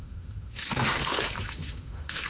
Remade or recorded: remade